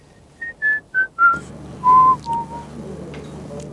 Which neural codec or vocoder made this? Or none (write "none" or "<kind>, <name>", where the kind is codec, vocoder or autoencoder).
none